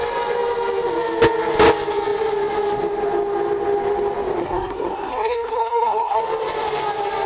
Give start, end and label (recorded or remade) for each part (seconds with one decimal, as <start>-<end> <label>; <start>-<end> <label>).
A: 0.0-4.4 recorded; 4.4-6.2 remade; 6.2-7.3 recorded